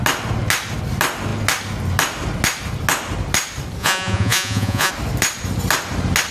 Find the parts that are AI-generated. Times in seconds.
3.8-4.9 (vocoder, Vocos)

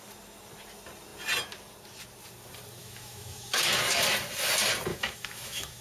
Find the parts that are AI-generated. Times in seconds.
2.8-3.6 (autoencoder, DAC-VAE); 4.9-5.8

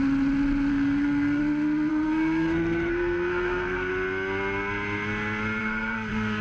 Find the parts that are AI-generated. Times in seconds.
0.7-1.4 (codec, SNAC); 1.9-3.9; 5.6-6.4

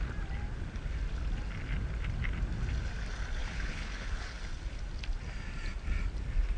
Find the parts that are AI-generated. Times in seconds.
3.4-4.4 (codec, HILCodec)